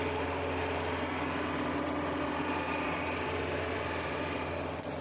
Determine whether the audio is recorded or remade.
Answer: remade